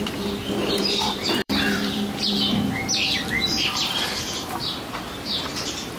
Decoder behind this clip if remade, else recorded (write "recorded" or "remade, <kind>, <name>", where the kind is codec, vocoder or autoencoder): remade, vocoder, BigVGAN v2